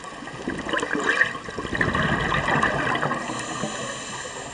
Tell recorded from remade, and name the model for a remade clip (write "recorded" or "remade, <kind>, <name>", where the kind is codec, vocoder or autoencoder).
recorded